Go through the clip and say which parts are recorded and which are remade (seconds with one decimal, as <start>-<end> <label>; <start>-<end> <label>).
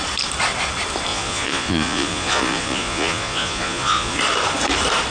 0.0-1.1 recorded; 1.1-4.2 remade; 4.2-5.1 recorded